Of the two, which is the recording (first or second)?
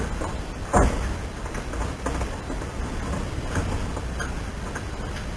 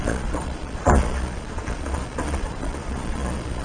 first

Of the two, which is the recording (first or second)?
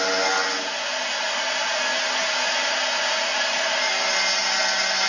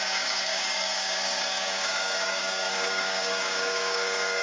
first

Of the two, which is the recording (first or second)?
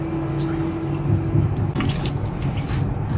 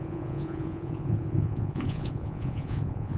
first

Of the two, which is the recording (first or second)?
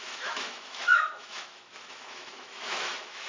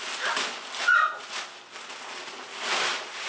second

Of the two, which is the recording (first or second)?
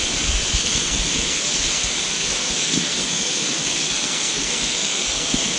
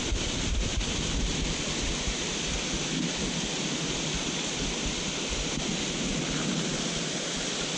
second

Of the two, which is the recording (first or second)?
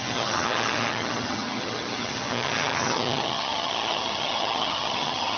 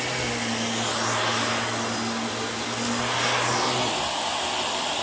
second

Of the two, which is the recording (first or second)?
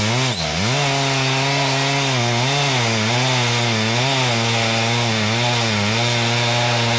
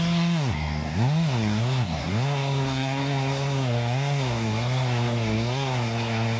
first